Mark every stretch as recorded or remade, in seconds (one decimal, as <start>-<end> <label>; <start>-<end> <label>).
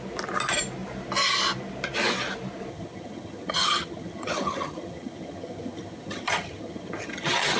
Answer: 0.0-2.7 recorded; 2.7-7.6 remade